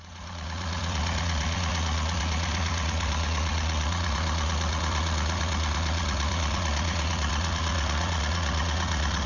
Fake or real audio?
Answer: fake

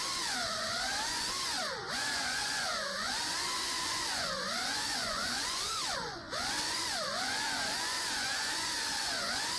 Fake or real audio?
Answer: fake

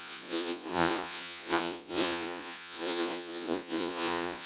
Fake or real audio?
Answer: fake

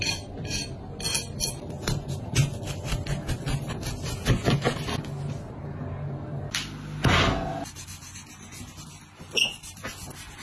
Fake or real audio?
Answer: real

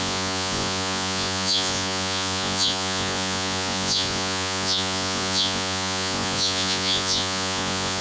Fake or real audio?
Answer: fake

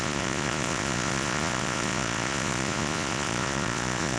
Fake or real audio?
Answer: fake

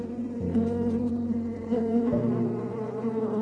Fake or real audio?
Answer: fake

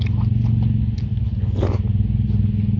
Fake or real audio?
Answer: real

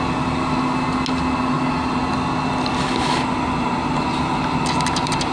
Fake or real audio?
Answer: real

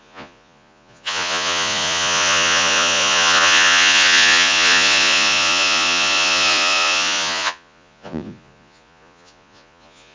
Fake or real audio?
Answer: fake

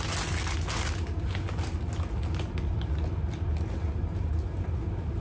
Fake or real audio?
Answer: real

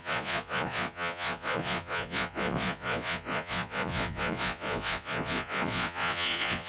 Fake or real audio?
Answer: fake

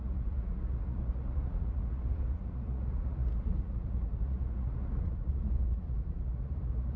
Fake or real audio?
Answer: fake